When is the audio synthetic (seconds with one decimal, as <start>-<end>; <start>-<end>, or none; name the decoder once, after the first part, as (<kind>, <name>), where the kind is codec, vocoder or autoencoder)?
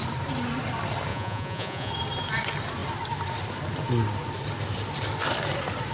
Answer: 1.1-1.9 (vocoder, Vocos)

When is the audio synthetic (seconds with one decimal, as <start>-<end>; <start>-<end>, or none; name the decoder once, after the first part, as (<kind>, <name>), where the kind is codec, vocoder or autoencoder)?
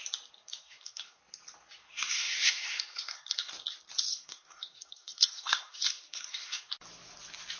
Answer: 0.4-1.2 (codec, SNAC); 1.8-3.5; 4.1-6.7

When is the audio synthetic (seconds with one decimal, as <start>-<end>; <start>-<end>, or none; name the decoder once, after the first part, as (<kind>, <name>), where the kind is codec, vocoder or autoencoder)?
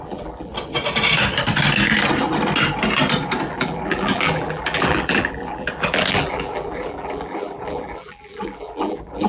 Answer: 0.0-0.5 (vocoder, BigVGAN v2); 3.5-9.3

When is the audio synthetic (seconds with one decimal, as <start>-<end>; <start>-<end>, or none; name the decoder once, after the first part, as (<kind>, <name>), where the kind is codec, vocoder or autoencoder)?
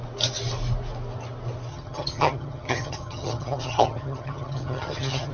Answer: 1.7-5.3 (vocoder, HiFi-GAN)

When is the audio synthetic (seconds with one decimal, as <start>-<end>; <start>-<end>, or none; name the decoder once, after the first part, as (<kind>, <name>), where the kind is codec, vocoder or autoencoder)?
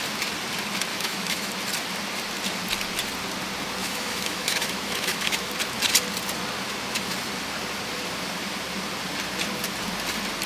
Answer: 0.9-1.5 (autoencoder, DAC-VAE); 3.8-5.5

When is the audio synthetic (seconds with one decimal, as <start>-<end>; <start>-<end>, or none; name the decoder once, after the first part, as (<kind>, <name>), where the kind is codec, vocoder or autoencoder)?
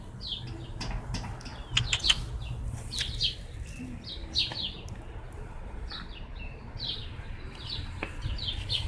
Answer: 4.2-5.5 (vocoder, BigVGAN v2)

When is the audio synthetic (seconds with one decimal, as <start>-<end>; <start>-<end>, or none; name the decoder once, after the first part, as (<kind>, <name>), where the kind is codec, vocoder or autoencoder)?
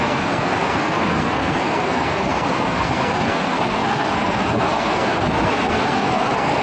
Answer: 0.0-6.6 (codec, SNAC)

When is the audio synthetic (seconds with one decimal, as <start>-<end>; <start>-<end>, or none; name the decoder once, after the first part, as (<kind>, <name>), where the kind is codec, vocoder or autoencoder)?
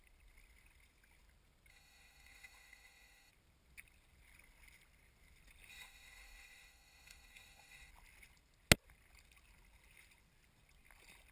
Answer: 1.7-3.3 (autoencoder, DAC-VAE); 5.7-7.9